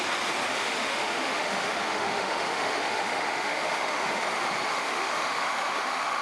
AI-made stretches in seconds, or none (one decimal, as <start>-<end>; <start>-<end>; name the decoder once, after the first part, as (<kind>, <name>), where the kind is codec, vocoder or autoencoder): 0.5-4.2 (autoencoder, DAC-VAE); 4.7-6.2